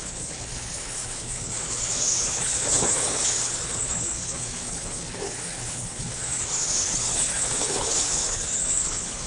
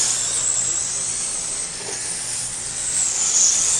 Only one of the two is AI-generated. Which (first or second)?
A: first